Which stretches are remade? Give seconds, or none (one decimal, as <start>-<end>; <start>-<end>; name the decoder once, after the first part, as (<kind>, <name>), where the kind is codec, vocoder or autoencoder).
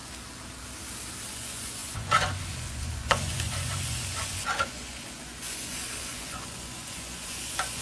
1.3-7.8 (vocoder, Vocos)